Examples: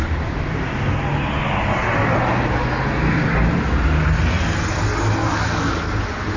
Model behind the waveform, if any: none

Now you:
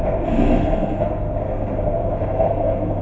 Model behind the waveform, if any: codec, SNAC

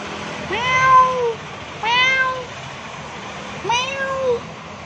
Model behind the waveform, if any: none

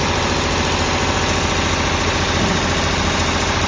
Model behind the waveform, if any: none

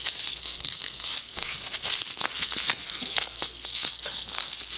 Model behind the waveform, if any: codec, SNAC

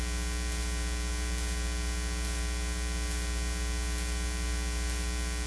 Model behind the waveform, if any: none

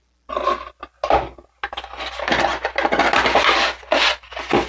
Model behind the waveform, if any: none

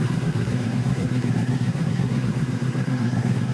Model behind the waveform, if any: codec, SNAC